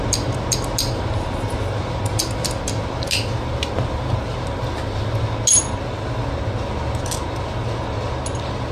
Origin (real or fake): real